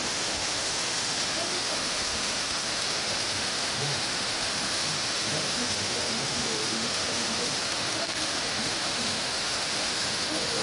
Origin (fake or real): fake